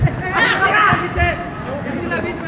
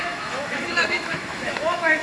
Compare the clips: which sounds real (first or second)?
first